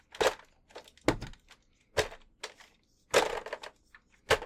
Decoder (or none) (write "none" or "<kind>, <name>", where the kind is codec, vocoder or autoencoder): none